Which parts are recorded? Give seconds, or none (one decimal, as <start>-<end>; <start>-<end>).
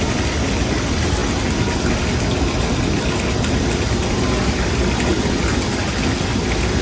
0.0-6.8